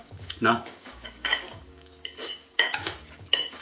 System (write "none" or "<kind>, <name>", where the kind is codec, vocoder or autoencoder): codec, DAC